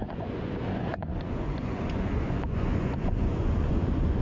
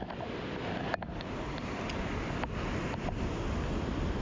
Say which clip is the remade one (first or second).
first